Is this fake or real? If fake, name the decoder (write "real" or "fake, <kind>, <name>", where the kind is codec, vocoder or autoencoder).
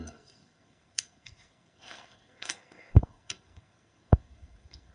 fake, codec, SNAC